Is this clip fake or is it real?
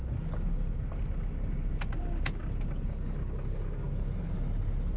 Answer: real